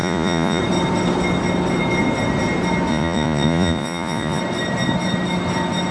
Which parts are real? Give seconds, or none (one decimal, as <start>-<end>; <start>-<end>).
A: 0.6-2.9; 4.4-5.9